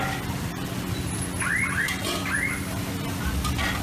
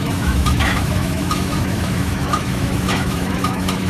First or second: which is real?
first